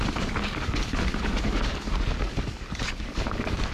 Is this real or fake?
fake